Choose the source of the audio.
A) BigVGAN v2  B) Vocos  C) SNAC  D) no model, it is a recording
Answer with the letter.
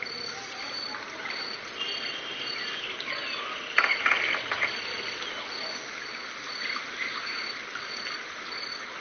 D